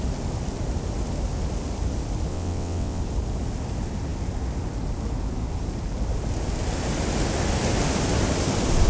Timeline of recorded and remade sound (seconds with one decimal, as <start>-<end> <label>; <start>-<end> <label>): 0.0-2.3 recorded; 2.3-3.0 remade; 3.0-8.9 recorded